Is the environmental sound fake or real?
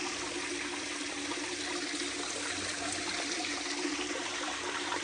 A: real